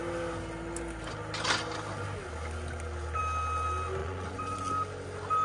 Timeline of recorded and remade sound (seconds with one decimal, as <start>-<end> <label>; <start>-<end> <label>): 0.0-4.0 recorded; 4.0-4.7 remade; 4.7-5.4 recorded